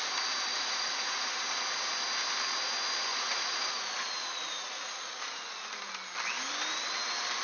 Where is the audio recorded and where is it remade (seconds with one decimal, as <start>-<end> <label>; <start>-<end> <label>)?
0.0-0.5 recorded; 0.5-1.4 remade; 1.4-3.1 recorded; 3.1-5.9 remade; 5.9-7.4 recorded